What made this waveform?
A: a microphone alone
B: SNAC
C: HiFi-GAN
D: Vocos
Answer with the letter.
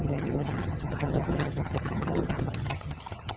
C